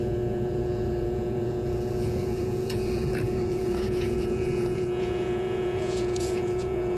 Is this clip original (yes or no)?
no